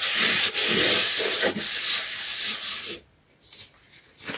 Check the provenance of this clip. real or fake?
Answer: real